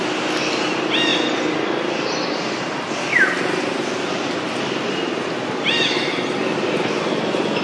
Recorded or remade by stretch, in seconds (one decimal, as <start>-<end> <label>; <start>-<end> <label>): 0.0-7.6 recorded